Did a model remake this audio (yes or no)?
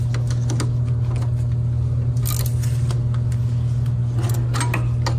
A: no